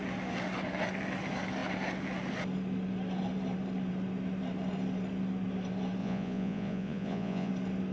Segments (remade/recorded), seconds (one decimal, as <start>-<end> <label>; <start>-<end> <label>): 0.0-6.0 recorded; 6.0-7.5 remade; 7.5-7.9 recorded